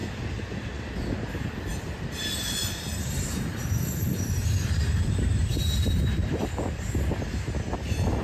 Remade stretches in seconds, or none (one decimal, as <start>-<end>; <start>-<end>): 2.6-6.5